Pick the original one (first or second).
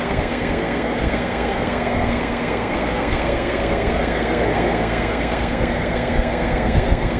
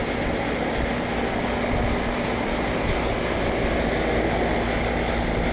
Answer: second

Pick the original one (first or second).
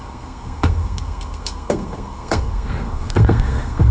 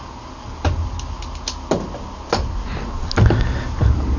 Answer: second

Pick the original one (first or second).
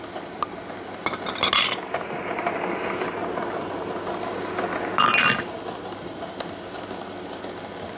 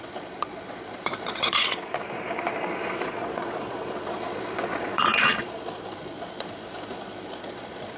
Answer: first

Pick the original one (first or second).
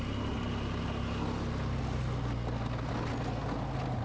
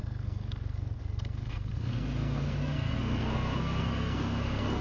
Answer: first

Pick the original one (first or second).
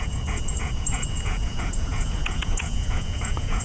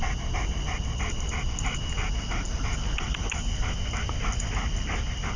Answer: second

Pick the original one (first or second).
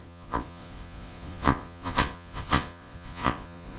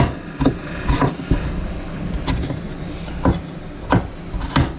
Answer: second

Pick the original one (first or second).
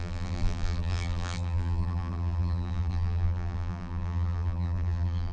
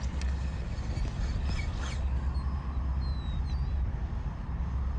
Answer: second